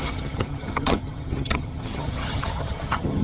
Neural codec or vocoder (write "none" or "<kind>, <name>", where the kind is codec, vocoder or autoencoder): vocoder, HiFi-GAN